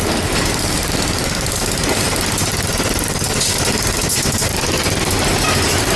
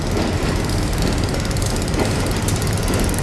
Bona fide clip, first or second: second